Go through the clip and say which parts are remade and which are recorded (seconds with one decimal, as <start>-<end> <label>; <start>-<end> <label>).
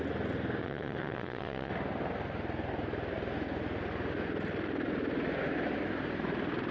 0.0-0.6 recorded; 0.6-1.7 remade; 1.7-6.7 recorded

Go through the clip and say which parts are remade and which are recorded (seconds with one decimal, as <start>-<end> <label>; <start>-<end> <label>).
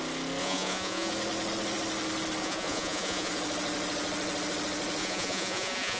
0.0-0.4 recorded; 0.4-1.1 remade; 1.1-2.4 recorded; 2.4-3.3 remade; 3.3-5.0 recorded; 5.0-6.0 remade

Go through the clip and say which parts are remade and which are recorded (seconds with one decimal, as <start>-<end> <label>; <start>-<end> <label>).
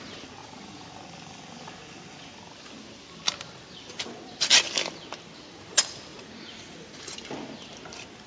0.0-0.4 recorded; 0.4-0.9 remade; 0.9-6.1 recorded; 6.1-7.0 remade; 7.0-8.3 recorded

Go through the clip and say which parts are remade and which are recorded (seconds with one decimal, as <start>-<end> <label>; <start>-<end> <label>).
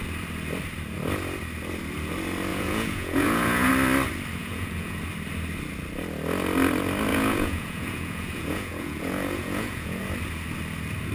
0.0-2.5 recorded; 2.5-3.7 remade; 3.7-4.4 recorded; 4.4-5.0 remade; 5.0-7.1 recorded; 7.1-10.0 remade; 10.0-11.1 recorded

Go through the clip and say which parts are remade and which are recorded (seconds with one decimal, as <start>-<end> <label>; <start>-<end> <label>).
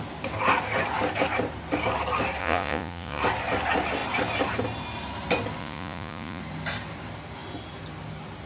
0.0-2.4 recorded; 2.4-3.2 remade; 3.2-5.6 recorded; 5.6-6.4 remade; 6.4-8.5 recorded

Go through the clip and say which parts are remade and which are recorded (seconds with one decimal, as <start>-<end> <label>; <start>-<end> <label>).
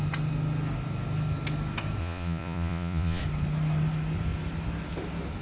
0.0-2.0 recorded; 2.0-3.2 remade; 3.2-5.4 recorded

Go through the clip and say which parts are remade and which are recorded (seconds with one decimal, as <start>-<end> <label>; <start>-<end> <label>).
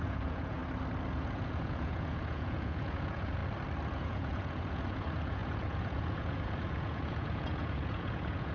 0.0-0.6 remade; 0.6-1.1 recorded; 1.1-3.4 remade; 3.4-4.0 recorded; 4.0-8.5 remade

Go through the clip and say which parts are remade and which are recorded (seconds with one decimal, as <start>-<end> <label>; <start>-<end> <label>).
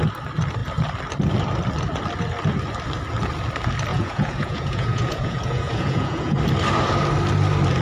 0.0-3.9 recorded; 3.9-6.4 remade; 6.4-7.8 recorded